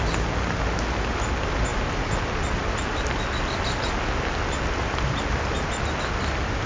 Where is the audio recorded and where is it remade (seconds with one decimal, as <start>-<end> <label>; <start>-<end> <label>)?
0.0-6.7 recorded